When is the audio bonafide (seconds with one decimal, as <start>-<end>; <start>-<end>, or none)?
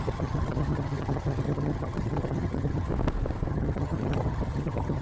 2.9-3.5